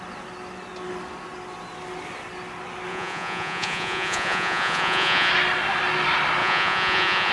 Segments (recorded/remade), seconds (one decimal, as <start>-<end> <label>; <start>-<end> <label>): 0.0-2.9 recorded; 2.9-5.3 remade; 5.3-6.4 recorded; 6.4-7.3 remade